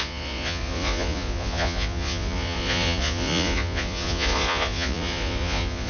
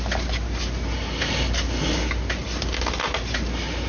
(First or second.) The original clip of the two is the second